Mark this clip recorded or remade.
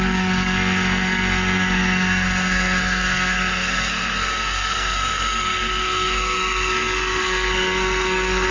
remade